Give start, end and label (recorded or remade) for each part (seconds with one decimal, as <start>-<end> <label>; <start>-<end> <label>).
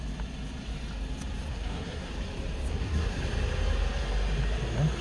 0.0-1.5 recorded; 1.5-2.1 remade; 2.1-2.7 recorded; 2.7-3.2 remade; 3.2-5.0 recorded